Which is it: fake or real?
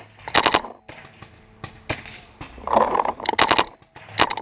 real